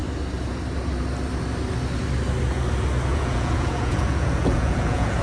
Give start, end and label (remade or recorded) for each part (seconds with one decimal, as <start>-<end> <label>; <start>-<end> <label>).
0.0-3.1 recorded; 3.1-5.2 remade